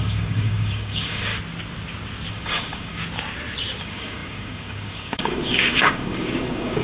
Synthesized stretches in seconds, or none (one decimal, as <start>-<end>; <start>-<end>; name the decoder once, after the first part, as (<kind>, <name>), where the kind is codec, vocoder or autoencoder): 0.0-1.3 (codec, DAC); 2.3-3.0; 3.8-6.8